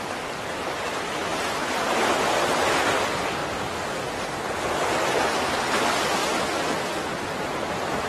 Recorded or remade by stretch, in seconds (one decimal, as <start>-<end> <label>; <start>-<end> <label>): 0.0-3.4 remade; 3.4-5.4 recorded; 5.4-8.1 remade